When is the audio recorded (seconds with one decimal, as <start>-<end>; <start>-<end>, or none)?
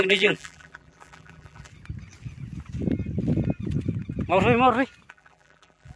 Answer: 1.7-5.1